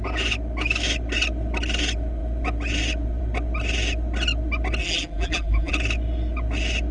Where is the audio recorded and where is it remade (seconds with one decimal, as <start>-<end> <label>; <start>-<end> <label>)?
0.0-4.8 recorded; 4.8-5.7 remade; 5.7-6.9 recorded